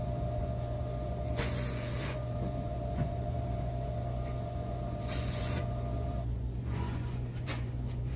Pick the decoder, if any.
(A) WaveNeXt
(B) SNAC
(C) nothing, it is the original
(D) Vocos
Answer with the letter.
D